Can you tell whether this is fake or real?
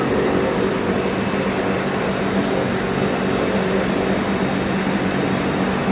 real